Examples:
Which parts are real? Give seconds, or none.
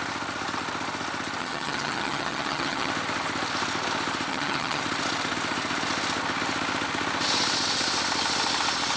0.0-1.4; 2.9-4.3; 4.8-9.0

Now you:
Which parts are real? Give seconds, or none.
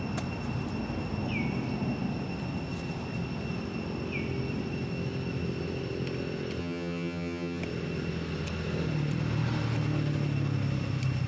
0.0-6.6; 7.6-11.3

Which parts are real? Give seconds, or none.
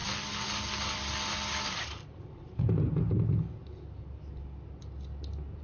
0.0-5.6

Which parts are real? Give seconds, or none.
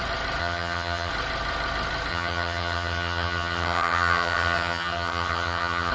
0.0-0.4; 1.1-2.1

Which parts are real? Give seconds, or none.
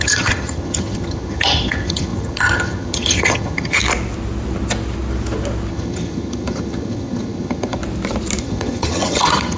3.8-5.7; 7.8-8.4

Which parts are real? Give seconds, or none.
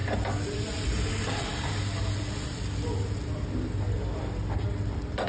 0.0-5.3